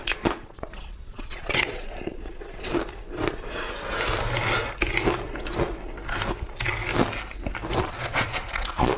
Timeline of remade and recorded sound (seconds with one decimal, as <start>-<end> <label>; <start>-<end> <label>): 0.0-2.7 remade; 2.7-7.8 recorded; 7.8-9.0 remade